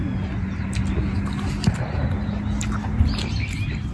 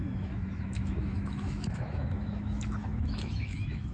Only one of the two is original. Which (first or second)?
first